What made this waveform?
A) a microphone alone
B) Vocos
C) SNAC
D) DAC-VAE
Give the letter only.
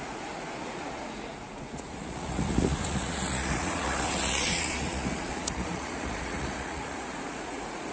B